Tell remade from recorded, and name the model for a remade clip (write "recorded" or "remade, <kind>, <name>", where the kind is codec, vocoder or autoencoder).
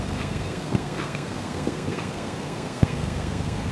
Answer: remade, codec, SNAC